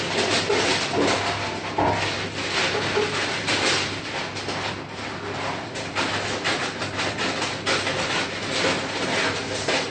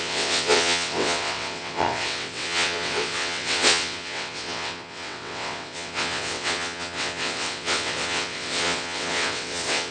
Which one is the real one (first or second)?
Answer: first